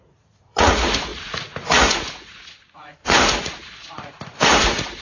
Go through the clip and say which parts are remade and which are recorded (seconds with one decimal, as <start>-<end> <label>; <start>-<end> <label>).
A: 0.0-5.0 remade